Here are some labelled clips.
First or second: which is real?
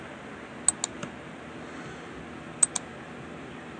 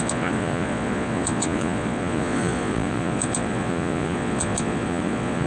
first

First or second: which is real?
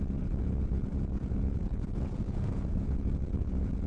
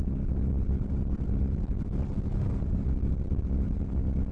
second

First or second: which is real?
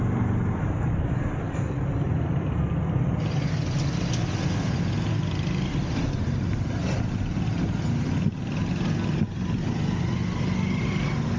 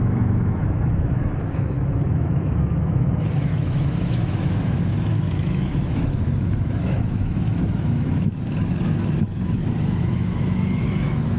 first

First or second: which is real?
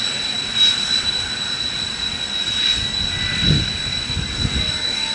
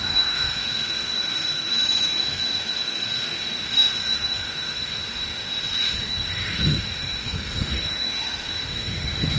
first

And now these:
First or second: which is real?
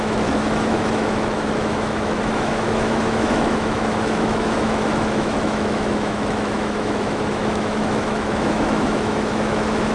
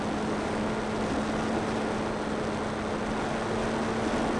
second